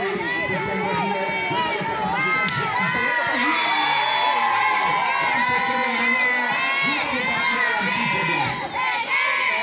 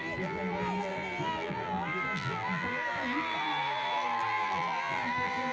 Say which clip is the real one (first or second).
first